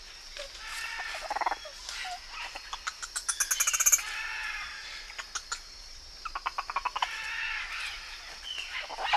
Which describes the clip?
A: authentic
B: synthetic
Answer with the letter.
A